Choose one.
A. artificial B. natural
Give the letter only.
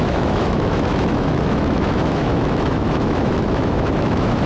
A